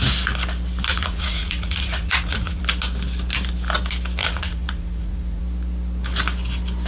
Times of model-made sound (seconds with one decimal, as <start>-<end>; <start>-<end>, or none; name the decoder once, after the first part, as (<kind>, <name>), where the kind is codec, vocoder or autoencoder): 0.9-2.6 (vocoder, Vocos); 4.2-5.4